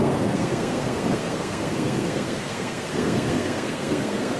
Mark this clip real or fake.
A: fake